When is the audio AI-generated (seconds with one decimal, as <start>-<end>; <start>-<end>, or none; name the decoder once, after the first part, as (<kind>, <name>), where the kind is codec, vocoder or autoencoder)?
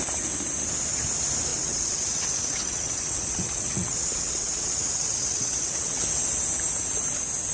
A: 1.5-6.0 (vocoder, WaveNeXt)